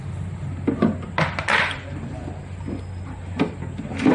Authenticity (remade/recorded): recorded